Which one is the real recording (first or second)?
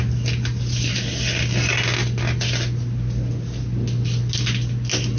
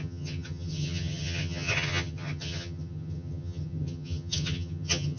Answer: first